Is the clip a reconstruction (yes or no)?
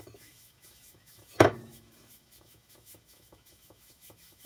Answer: yes